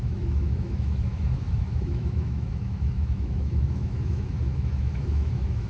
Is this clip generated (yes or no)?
yes